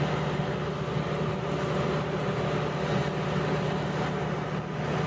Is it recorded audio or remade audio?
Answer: recorded